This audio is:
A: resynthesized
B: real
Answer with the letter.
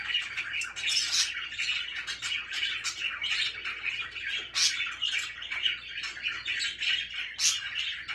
B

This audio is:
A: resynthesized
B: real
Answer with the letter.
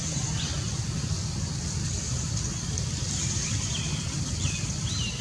B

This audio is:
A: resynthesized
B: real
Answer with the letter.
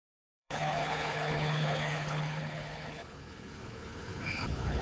A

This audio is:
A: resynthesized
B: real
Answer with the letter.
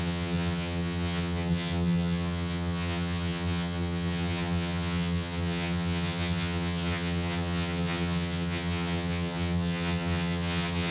A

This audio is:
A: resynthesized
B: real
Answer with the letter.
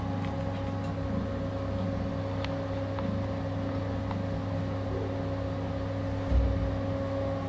B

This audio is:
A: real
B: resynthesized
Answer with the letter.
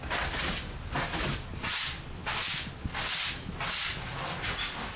A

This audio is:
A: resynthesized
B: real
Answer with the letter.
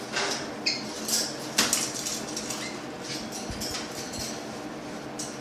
B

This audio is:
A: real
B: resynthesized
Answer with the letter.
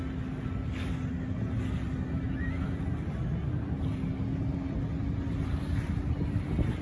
A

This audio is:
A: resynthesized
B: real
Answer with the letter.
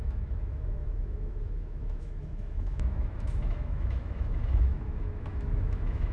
A